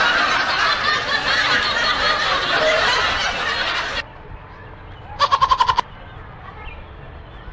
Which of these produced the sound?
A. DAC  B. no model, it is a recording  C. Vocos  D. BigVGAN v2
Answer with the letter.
D